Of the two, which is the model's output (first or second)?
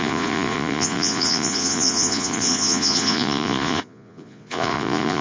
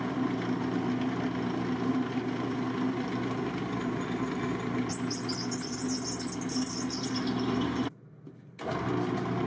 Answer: first